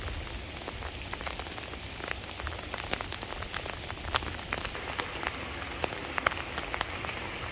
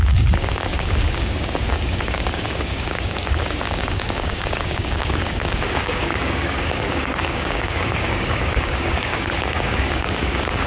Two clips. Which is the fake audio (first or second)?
second